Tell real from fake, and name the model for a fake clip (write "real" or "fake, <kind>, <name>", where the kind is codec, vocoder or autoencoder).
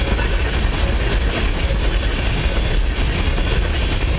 real